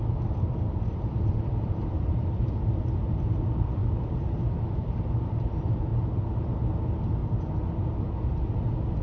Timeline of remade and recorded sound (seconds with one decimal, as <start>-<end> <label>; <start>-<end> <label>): 0.0-5.9 remade; 5.9-6.4 recorded; 6.4-7.2 remade; 7.2-9.0 recorded